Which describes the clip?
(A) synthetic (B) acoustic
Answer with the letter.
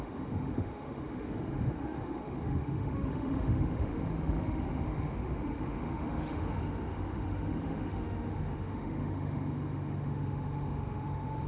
A